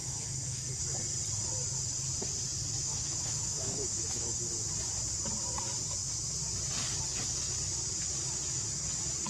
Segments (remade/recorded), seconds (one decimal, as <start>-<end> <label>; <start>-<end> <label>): 0.0-0.6 remade; 0.6-2.8 recorded; 2.8-4.4 remade; 4.4-9.3 recorded